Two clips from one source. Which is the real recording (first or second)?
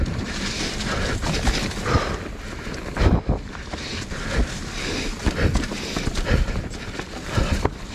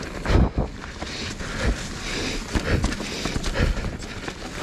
second